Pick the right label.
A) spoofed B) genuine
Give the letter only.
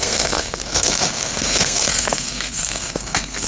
A